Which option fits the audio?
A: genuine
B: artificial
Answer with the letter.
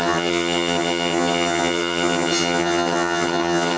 B